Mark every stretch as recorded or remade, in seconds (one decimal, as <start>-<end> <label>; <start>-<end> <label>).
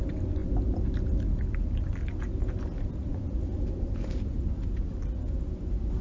0.0-6.0 recorded